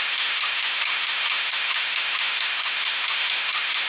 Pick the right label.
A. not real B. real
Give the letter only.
A